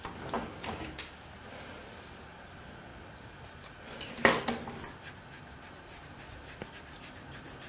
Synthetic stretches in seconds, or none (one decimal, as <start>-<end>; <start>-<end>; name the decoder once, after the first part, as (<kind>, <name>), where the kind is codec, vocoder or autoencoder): none